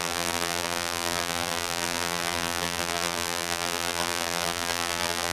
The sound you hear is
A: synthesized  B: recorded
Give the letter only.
A